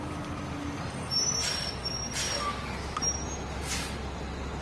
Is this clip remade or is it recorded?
recorded